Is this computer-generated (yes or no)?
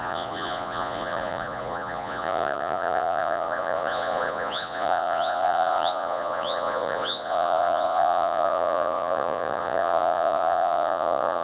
yes